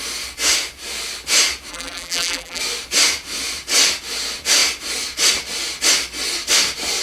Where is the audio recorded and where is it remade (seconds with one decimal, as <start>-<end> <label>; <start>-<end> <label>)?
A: 0.0-1.7 recorded; 1.7-2.6 remade; 2.6-7.0 recorded